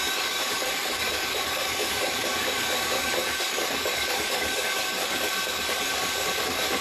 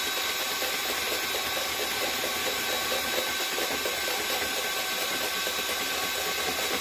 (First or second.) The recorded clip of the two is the second